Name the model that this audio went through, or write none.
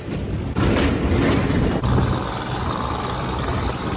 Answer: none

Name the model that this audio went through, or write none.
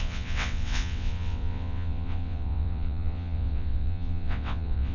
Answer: vocoder, WaveNeXt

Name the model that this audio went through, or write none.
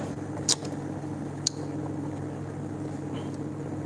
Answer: none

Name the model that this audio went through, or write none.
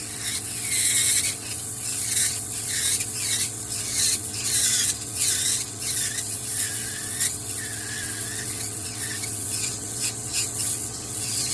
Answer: vocoder, WaveNeXt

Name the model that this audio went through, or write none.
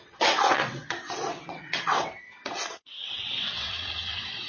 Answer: vocoder, WaveNeXt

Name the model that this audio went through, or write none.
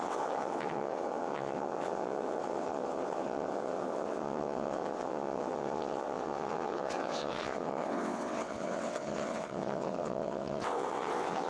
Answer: vocoder, WaveNeXt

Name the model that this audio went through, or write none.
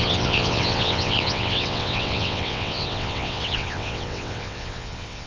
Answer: vocoder, WaveNeXt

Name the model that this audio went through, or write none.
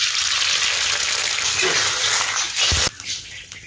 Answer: none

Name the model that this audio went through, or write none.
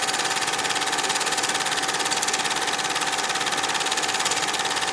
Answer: none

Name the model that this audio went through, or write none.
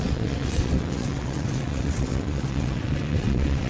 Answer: vocoder, WaveNeXt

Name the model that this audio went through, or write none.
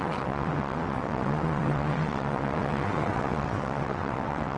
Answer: vocoder, WaveNeXt